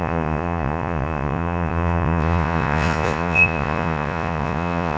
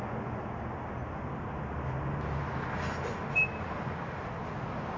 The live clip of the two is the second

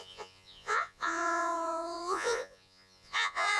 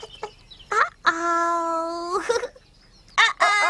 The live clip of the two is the second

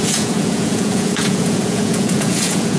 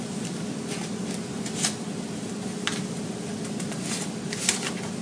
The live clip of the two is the second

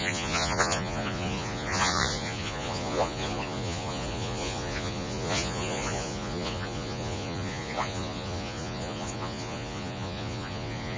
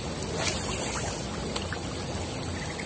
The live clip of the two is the second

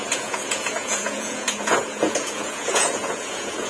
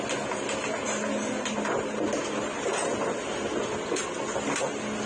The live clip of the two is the second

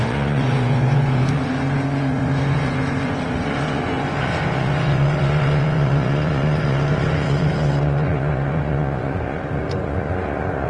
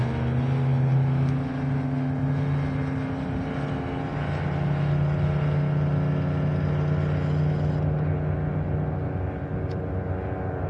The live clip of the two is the second